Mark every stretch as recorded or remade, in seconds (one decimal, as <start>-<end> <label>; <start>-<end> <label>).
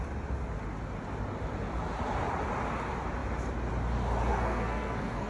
0.0-4.3 recorded; 4.3-5.3 remade